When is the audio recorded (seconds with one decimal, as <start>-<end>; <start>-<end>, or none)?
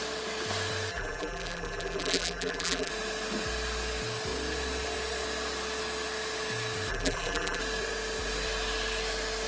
0.0-0.9; 2.9-6.9; 7.6-9.5